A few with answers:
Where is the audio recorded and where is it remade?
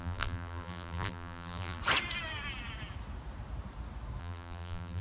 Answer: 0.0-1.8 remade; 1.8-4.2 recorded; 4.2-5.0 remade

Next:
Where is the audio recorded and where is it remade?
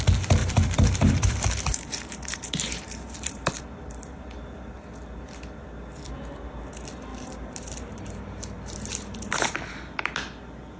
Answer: 0.0-0.4 recorded; 0.4-3.5 remade; 3.5-7.1 recorded; 7.1-9.7 remade; 9.7-10.8 recorded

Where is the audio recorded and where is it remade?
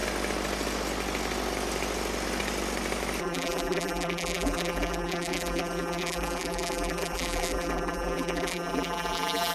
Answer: 0.0-3.2 recorded; 3.2-9.5 remade